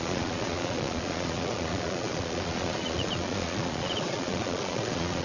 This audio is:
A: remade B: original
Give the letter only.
A